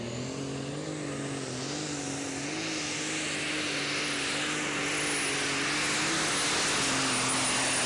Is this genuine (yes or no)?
yes